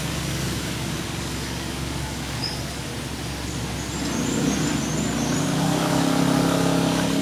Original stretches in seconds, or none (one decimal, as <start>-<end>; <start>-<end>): 2.9-5.4